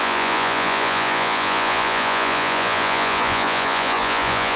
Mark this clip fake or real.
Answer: fake